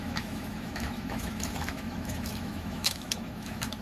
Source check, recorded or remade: remade